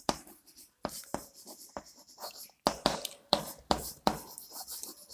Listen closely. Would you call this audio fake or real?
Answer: fake